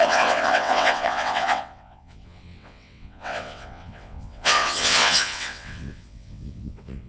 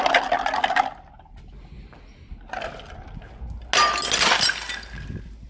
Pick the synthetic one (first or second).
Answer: first